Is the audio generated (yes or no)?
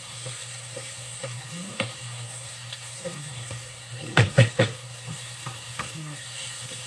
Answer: yes